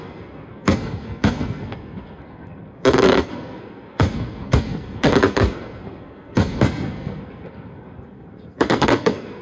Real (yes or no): no